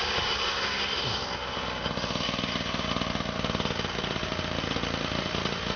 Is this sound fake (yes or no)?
no